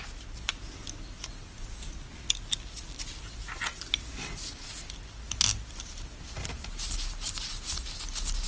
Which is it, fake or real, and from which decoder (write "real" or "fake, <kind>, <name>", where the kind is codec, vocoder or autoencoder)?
real